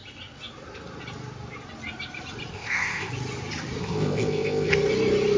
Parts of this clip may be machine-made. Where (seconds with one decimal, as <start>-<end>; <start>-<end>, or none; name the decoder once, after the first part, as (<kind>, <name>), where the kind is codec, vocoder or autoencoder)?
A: 2.5-3.1 (codec, ZipCodec); 3.8-4.7